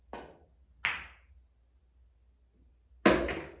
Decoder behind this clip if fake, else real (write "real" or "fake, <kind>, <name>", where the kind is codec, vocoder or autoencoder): real